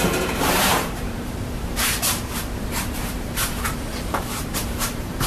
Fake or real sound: fake